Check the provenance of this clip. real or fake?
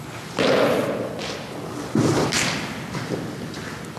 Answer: real